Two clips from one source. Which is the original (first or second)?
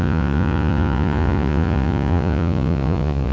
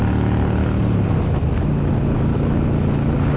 second